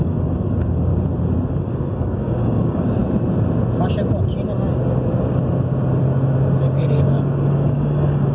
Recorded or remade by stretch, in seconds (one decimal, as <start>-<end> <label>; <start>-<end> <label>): 0.0-0.9 remade; 0.9-1.5 recorded; 1.5-3.0 remade; 3.0-6.7 recorded; 6.7-8.3 remade